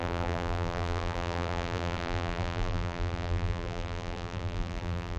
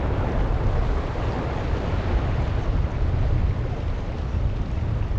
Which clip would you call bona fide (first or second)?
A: second